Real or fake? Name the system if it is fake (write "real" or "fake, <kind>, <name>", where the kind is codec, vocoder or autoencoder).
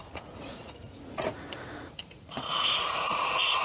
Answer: fake, vocoder, Vocos